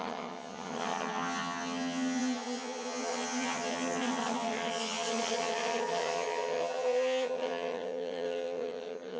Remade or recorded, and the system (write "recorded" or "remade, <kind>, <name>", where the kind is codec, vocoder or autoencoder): remade, vocoder, HiFi-GAN